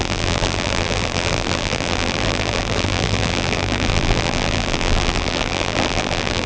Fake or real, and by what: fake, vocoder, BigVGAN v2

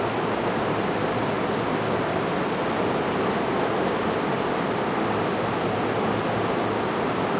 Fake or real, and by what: real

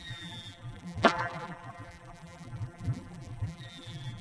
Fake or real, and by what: fake, vocoder, BigVGAN v2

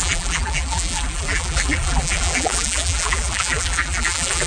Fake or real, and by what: fake, vocoder, BigVGAN v2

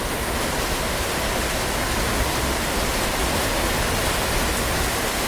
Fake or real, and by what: real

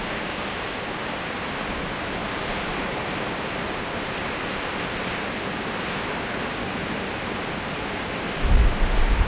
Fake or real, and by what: fake, vocoder, BigVGAN v2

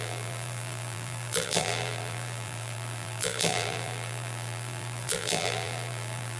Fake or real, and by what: fake, vocoder, BigVGAN v2